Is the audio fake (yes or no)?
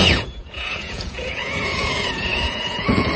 yes